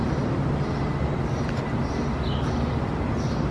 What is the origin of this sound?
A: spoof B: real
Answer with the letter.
B